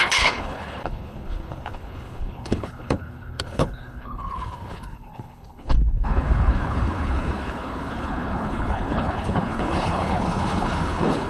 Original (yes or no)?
no